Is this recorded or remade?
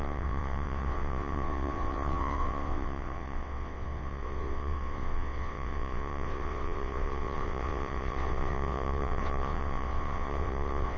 remade